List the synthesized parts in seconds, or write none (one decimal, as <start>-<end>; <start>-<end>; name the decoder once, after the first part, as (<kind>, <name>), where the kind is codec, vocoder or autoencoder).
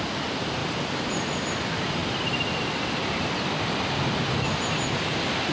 0.6-1.1 (vocoder, BigVGAN v2)